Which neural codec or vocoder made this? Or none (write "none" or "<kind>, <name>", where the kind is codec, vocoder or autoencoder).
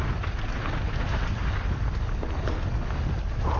none